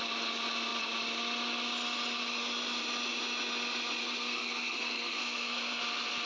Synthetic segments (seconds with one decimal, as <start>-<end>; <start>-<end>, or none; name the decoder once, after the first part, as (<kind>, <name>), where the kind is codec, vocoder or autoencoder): 4.0-5.8 (codec, SNAC)